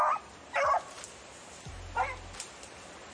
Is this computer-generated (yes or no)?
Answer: no